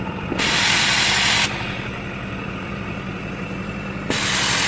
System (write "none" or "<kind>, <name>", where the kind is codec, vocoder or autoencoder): none